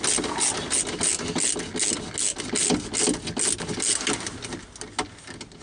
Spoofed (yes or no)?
no